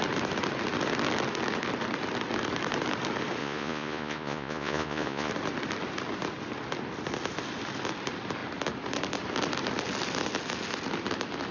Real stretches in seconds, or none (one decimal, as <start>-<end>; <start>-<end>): 0.0-3.4; 5.3-11.5